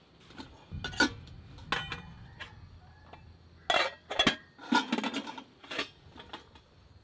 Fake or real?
real